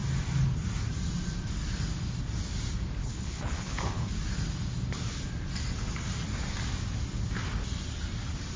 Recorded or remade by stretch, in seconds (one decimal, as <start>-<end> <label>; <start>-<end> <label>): 0.0-3.0 recorded; 3.0-4.2 remade; 4.2-8.6 recorded